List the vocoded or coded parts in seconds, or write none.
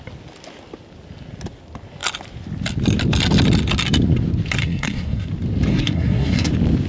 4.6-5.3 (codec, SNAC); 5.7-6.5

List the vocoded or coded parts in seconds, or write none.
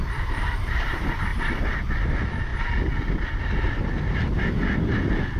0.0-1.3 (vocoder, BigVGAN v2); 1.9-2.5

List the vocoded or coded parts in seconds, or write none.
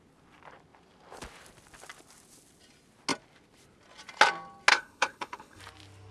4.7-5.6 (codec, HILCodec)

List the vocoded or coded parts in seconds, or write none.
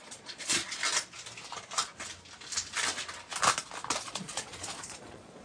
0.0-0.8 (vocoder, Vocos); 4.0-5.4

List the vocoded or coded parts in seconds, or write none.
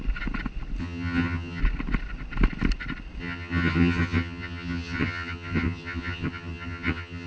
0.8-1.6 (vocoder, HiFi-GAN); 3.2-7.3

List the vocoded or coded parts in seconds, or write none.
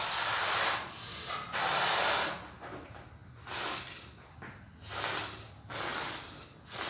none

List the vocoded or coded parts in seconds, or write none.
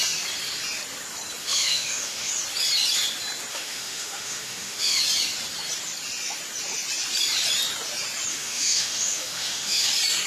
1.4-2.3 (autoencoder, DAC-VAE); 3.5-5.0; 8.3-9.9